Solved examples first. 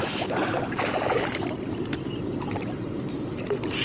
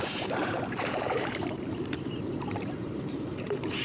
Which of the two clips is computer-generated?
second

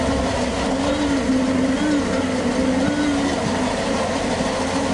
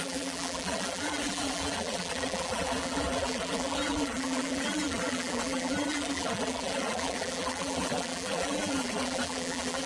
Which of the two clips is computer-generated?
second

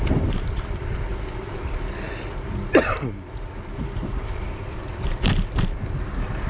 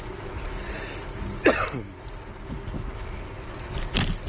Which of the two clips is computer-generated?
first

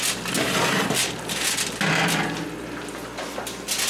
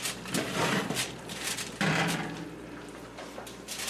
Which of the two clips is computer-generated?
second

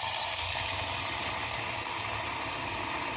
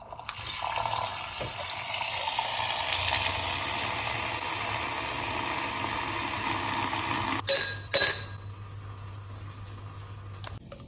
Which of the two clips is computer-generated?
first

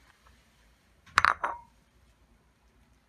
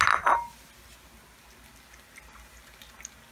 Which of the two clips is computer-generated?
first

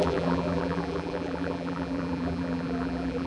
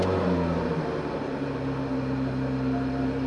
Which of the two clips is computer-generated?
first